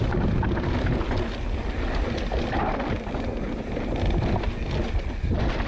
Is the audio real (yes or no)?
yes